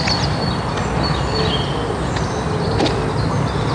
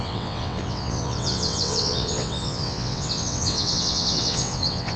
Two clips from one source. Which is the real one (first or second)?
first